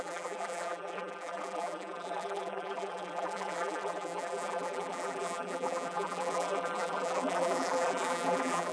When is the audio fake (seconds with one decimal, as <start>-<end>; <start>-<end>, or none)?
0.0-8.7